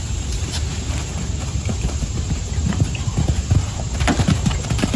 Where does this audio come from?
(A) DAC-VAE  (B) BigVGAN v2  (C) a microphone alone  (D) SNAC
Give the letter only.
B